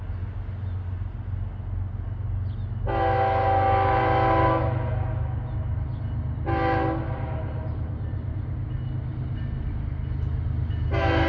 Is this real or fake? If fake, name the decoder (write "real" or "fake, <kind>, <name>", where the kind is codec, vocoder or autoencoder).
real